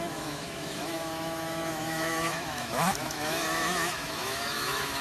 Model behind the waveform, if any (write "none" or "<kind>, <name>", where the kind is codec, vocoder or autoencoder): autoencoder, DAC-VAE